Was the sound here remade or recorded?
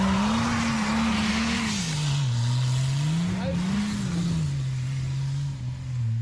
recorded